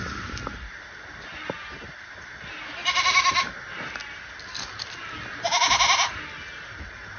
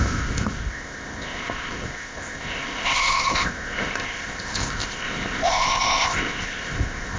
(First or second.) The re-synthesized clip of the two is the second